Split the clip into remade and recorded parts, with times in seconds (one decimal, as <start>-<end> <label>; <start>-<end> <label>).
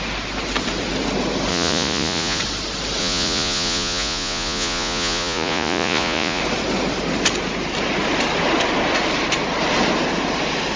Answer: 0.0-1.5 recorded; 1.5-2.4 remade; 2.4-3.0 recorded; 3.0-6.4 remade; 6.4-10.8 recorded